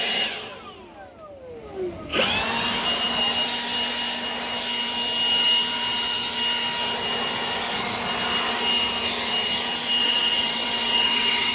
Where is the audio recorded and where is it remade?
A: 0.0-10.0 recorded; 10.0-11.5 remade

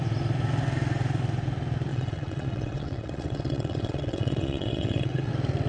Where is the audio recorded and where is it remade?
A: 0.0-1.9 recorded; 1.9-5.3 remade; 5.3-5.7 recorded

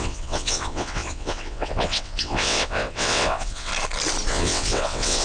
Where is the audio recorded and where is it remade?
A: 0.0-3.7 remade; 3.7-4.3 recorded; 4.3-5.2 remade